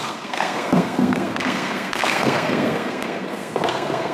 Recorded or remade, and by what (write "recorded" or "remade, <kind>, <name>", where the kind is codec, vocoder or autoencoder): remade, codec, SNAC